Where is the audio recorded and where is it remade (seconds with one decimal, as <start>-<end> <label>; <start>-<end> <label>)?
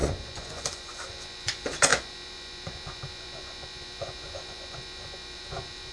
0.0-5.9 remade